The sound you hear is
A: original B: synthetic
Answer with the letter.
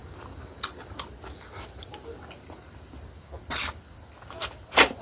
A